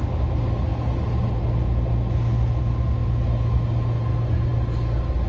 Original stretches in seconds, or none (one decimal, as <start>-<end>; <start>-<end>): 0.0-5.3